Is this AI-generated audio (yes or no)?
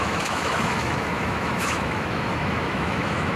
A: yes